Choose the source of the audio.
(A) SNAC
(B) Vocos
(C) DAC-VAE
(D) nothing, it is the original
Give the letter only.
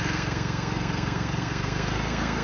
A